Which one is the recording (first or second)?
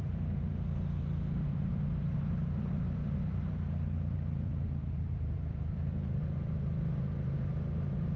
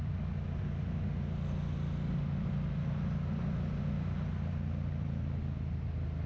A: second